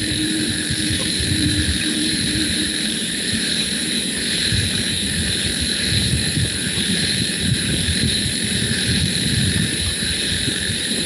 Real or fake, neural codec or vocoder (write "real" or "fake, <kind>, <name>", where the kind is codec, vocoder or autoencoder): fake, vocoder, BigVGAN v2